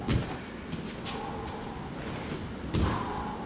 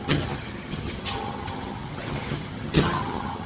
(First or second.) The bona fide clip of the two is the first